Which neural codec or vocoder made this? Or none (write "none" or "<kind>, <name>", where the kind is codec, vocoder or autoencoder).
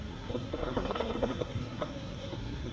codec, SNAC